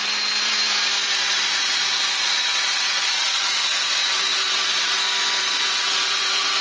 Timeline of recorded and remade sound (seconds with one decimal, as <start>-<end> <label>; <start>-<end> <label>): 0.0-1.0 recorded; 1.0-5.0 remade; 5.0-5.4 recorded; 5.4-6.6 remade